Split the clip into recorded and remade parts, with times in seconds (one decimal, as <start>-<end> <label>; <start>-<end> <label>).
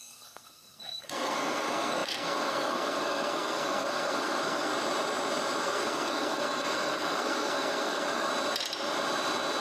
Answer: 0.0-4.7 remade; 4.7-5.6 recorded; 5.6-8.3 remade; 8.3-9.6 recorded